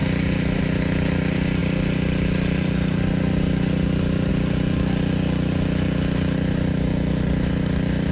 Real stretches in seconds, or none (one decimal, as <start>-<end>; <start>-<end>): 0.0-8.1